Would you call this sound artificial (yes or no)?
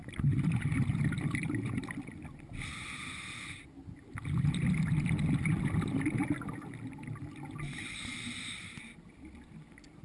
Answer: no